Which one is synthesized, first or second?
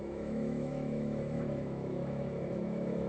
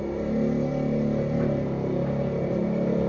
first